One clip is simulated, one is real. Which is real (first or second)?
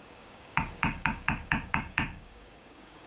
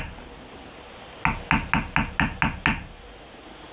second